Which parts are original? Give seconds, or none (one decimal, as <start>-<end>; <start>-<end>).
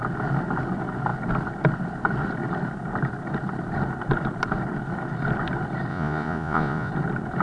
0.0-5.9; 6.9-7.4